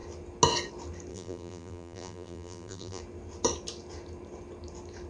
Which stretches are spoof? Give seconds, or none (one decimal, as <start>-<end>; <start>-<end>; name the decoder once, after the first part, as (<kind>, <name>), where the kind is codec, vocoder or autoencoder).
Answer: 1.1-3.0 (vocoder, BigVGAN v2)